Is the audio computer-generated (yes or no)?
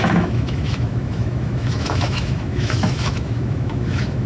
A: yes